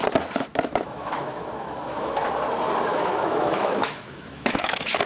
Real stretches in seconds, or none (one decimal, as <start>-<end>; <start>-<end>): 0.0-0.5; 2.3-2.9